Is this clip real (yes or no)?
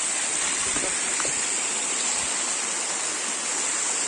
yes